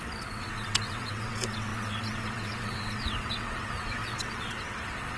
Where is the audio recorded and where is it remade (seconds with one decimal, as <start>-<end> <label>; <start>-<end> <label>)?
0.0-5.2 remade